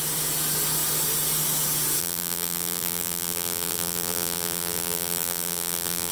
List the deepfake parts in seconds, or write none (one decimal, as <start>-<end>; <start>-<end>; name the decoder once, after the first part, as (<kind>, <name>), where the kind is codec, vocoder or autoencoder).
2.0-6.1 (vocoder, BigVGAN v2)

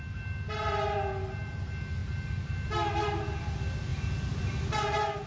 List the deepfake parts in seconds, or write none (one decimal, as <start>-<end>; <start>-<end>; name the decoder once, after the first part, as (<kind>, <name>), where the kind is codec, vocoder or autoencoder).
none

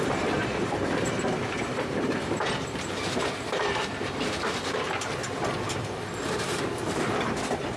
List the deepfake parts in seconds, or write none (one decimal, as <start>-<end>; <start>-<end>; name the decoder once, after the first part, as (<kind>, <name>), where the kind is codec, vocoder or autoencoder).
0.0-5.2 (vocoder, BigVGAN v2); 5.8-7.8